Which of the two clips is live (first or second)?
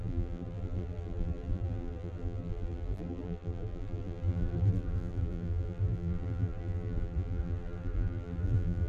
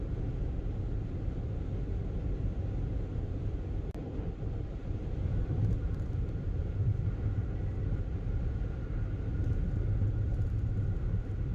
second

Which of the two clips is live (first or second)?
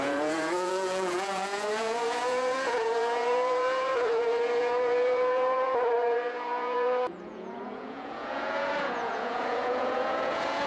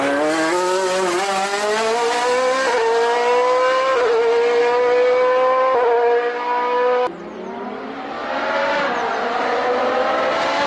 second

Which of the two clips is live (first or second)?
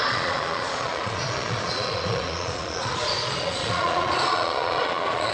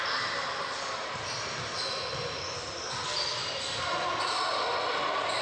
second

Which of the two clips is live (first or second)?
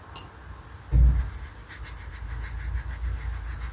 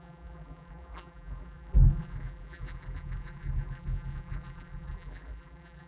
first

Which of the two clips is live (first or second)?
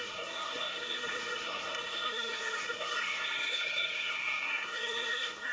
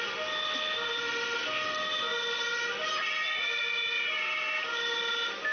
second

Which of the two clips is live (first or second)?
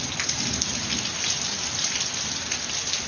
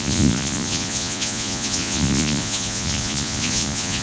first